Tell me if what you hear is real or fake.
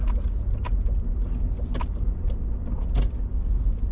real